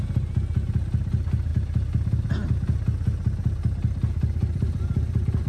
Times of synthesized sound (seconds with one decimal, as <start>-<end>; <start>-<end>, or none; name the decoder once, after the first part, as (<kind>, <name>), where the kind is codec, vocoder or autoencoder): none